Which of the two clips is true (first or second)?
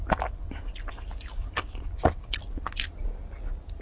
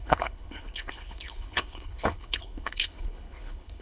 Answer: first